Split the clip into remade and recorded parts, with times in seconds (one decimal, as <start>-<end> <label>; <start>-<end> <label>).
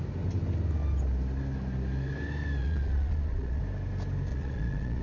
0.0-2.6 recorded; 2.6-3.6 remade; 3.6-4.3 recorded; 4.3-5.0 remade